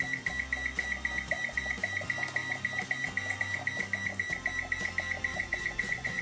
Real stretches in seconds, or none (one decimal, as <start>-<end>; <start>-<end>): 0.0-5.3